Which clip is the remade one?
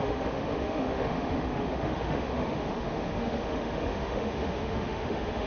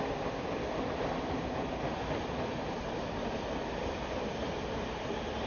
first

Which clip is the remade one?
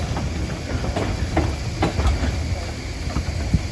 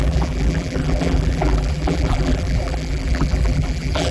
second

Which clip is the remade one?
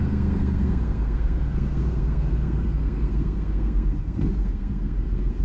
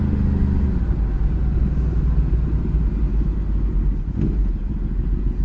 first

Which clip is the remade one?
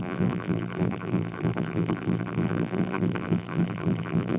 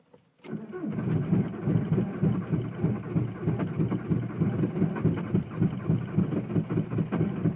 first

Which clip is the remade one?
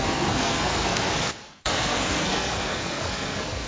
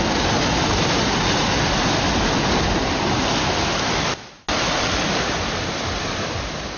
first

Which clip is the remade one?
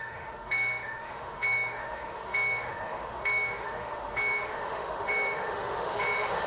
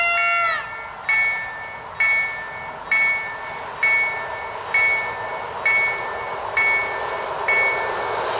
first